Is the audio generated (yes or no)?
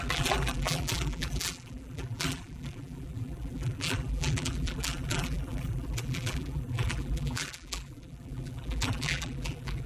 yes